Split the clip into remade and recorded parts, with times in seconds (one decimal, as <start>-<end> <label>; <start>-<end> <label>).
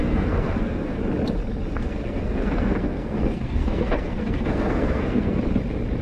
0.0-1.0 remade; 1.0-1.8 recorded; 1.8-5.4 remade; 5.4-6.0 recorded